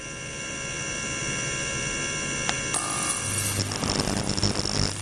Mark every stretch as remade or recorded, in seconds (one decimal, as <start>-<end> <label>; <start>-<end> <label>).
0.0-5.0 recorded